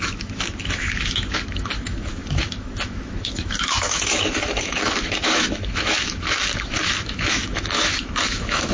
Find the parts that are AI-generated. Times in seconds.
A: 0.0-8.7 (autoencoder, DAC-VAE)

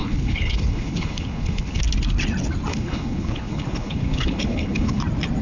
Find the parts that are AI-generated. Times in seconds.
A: 0.0-1.8 (codec, HILCodec); 2.7-5.0

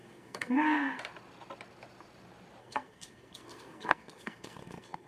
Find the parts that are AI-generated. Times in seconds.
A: 0.0-1.0 (codec, SNAC); 2.6-5.1

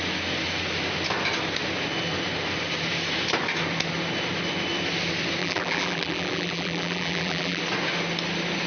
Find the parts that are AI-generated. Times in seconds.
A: 5.4-7.6 (vocoder, BigVGAN v2)

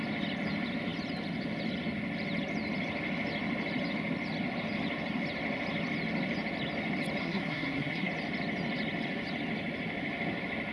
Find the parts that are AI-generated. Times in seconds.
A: 7.2-8.1 (codec, SNAC)

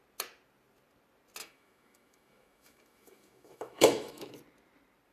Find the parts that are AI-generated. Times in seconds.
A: 1.4-4.3 (autoencoder, DAC-VAE)